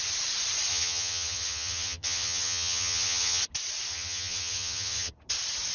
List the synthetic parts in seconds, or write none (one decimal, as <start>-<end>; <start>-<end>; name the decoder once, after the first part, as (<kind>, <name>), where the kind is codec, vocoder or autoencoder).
0.7-3.4 (vocoder, HiFi-GAN); 3.9-5.1